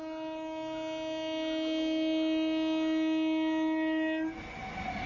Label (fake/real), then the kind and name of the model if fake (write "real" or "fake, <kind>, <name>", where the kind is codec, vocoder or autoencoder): real